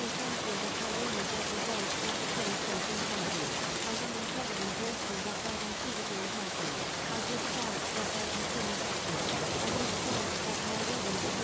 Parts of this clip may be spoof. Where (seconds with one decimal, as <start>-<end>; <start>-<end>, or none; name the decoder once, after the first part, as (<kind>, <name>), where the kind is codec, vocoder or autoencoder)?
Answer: 0.5-1.2 (autoencoder, DAC-VAE); 5.0-6.8